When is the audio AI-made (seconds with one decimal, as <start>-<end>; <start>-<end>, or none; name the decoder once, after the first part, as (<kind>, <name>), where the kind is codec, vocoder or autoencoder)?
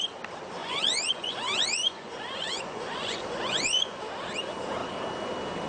0.6-4.0 (vocoder, Vocos)